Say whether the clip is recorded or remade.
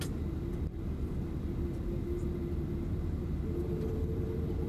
recorded